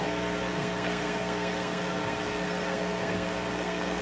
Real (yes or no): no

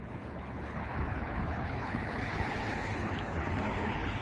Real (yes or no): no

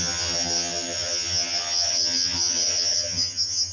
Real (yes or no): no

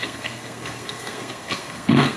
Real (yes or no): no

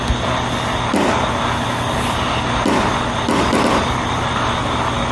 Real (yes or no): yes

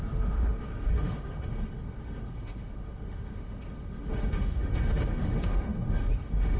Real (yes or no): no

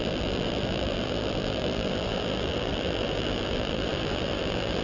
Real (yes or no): no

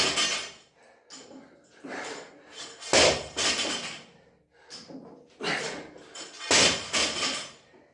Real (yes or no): yes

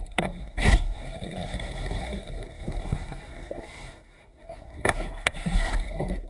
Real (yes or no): no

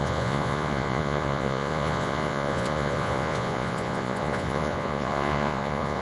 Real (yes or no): no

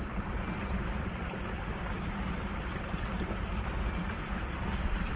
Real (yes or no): yes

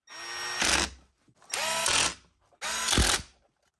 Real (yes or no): yes